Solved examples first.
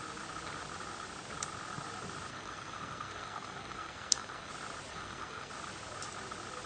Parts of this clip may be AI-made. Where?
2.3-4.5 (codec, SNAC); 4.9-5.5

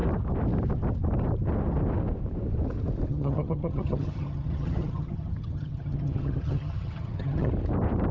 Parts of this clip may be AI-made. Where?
3.1-7.5 (vocoder, HiFi-GAN)

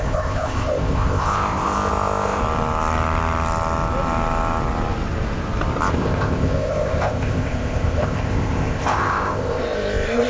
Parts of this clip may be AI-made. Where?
0.0-2.4 (codec, ZipCodec); 5.9-10.3

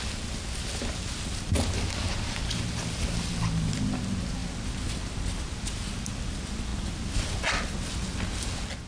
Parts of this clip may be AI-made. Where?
none

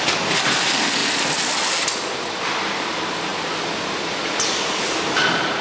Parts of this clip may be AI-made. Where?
none

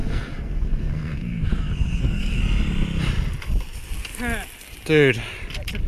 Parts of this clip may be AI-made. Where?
0.0-2.4 (codec, SNAC)

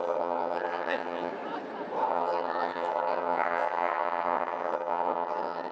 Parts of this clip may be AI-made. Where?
0.0-1.3 (vocoder, HiFi-GAN); 2.1-5.7

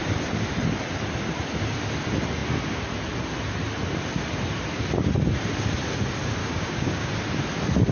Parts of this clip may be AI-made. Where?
6.4-7.1 (codec, DAC)